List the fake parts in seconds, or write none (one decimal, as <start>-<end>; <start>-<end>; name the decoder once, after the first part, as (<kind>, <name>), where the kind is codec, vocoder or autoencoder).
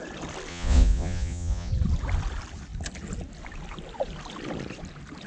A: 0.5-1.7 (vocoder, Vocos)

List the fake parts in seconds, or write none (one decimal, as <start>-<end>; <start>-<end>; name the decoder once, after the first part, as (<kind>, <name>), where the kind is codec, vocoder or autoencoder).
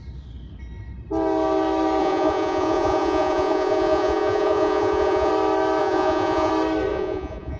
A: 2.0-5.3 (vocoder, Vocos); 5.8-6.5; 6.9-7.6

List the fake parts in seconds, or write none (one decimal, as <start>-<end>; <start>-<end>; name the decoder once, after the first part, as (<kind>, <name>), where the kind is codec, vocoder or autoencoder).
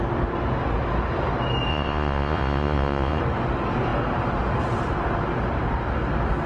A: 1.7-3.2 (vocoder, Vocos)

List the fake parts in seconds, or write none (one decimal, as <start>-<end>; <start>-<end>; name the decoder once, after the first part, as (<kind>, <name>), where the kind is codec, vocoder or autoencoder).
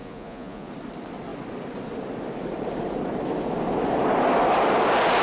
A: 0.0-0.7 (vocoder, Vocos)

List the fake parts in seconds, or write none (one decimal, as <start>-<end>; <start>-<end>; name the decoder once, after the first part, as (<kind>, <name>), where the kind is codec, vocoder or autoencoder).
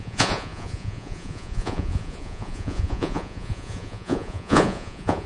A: 0.0-5.3 (vocoder, Vocos)